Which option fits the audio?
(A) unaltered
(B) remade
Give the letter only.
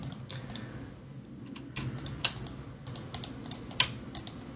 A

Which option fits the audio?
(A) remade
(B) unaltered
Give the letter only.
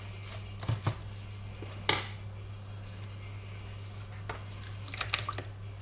B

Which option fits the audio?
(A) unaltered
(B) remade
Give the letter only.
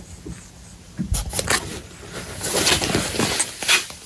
A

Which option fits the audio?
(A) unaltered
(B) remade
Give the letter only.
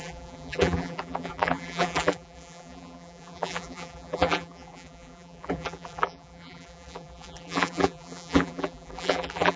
B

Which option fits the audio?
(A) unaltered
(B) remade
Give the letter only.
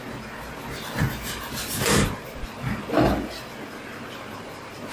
A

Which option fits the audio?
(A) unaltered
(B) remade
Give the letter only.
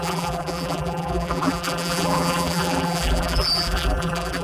B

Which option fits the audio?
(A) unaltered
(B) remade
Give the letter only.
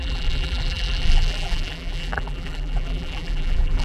B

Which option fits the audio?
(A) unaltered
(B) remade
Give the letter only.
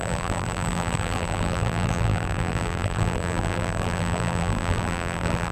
B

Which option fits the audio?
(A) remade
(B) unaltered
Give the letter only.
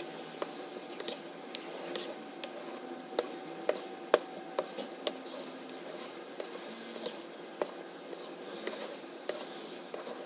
B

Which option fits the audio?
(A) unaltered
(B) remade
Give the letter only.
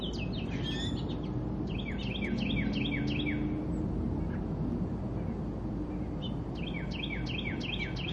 A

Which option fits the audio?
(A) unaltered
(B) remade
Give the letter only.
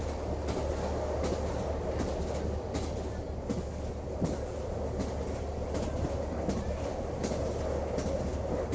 A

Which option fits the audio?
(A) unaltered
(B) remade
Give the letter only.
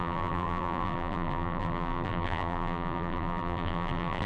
B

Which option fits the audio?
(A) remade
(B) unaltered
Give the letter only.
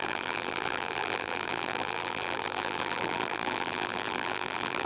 A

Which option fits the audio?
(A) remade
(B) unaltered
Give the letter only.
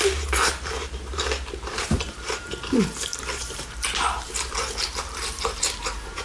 A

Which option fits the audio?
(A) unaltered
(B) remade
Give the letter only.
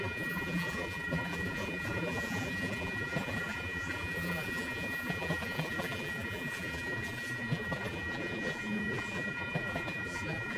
B